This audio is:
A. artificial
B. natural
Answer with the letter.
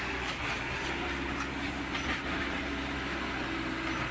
B